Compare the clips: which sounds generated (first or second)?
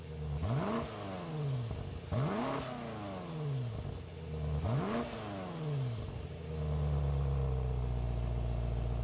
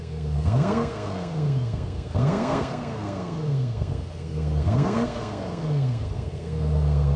second